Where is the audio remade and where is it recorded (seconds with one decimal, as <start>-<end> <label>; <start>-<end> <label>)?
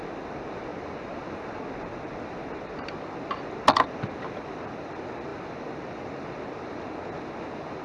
0.0-7.8 recorded